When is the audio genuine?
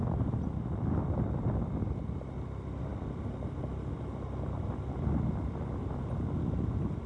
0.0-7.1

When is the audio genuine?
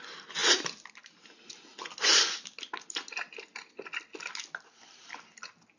0.0-5.8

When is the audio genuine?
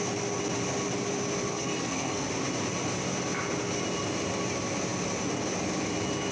0.0-1.5; 2.3-6.3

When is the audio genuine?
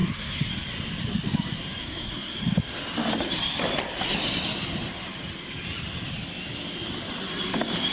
0.5-1.8; 2.4-7.9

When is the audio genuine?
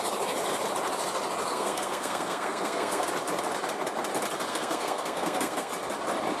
0.0-1.5; 3.1-4.5; 5.7-6.4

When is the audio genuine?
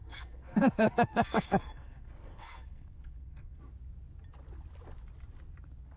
3.6-6.0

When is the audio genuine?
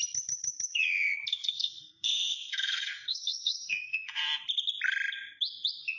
0.0-1.3; 4.2-6.0